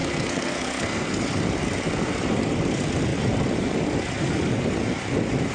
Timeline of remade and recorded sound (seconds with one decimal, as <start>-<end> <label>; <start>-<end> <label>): 0.0-1.2 remade; 1.2-5.5 recorded